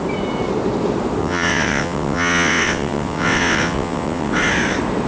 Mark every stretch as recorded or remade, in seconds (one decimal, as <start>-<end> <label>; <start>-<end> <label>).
0.0-1.2 recorded; 1.2-4.3 remade; 4.3-5.1 recorded